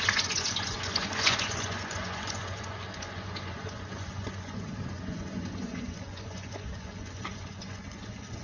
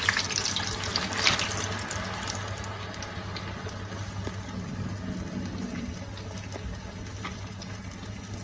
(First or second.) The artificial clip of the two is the first